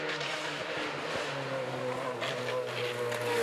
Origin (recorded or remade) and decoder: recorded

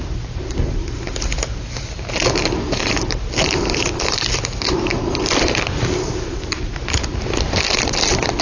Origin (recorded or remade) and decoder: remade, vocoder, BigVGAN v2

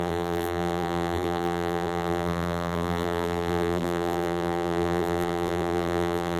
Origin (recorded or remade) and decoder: remade, vocoder, BigVGAN v2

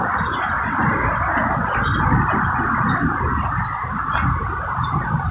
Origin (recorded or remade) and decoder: recorded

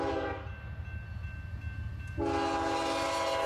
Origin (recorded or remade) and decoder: recorded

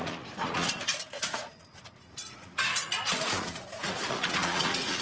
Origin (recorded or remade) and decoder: remade, vocoder, Vocos